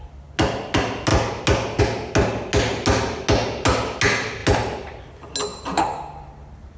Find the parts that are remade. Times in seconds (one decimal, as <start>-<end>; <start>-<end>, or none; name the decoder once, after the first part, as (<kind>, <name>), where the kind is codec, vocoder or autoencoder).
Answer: 5.5-6.8 (vocoder, BigVGAN v2)